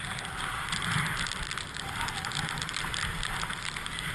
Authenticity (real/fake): real